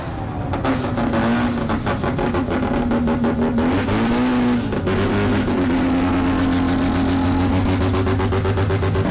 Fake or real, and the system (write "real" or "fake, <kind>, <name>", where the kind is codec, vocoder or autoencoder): real